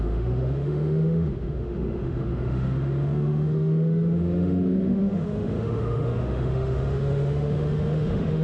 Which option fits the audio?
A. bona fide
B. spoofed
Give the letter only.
B